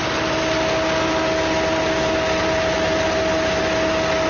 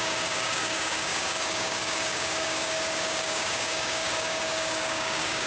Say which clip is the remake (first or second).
second